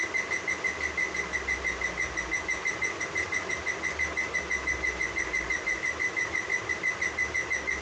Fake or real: real